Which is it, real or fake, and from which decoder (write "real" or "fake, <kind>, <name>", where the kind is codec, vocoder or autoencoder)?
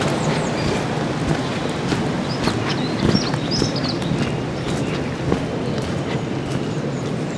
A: real